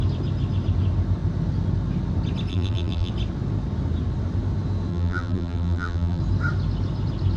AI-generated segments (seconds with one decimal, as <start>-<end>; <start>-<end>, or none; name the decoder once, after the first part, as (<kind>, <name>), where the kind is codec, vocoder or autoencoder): 2.5-3.1 (vocoder, BigVGAN v2); 4.9-6.2